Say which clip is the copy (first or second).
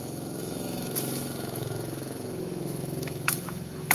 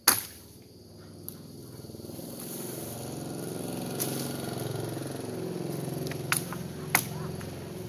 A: first